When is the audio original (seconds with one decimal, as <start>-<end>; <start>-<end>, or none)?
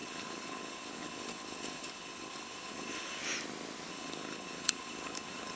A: 3.2-3.9